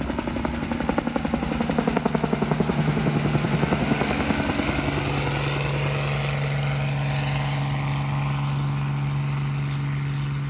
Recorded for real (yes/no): yes